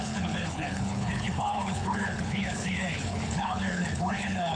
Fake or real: fake